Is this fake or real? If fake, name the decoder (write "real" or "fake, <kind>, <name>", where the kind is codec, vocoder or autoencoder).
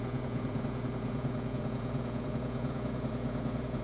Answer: fake, vocoder, Vocos